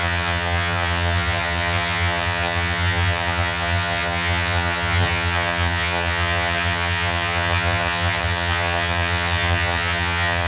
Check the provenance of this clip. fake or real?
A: fake